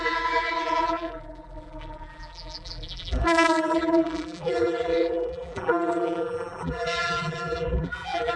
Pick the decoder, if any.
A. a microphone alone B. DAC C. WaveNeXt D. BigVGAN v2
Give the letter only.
D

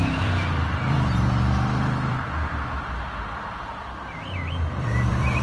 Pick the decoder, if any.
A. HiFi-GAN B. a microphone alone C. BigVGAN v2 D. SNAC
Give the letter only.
C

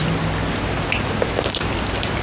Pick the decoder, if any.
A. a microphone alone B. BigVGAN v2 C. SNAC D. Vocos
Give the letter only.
B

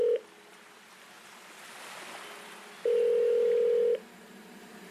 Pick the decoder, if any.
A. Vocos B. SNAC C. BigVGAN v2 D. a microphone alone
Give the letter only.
D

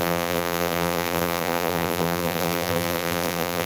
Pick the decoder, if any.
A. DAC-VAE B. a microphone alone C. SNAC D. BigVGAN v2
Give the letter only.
D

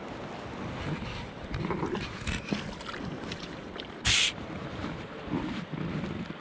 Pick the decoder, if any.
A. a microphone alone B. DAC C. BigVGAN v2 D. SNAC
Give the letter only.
A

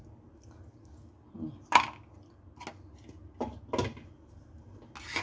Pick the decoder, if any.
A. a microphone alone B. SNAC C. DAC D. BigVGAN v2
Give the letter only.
A